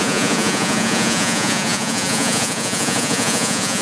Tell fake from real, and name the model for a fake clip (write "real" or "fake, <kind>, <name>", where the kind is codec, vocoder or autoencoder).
fake, vocoder, Vocos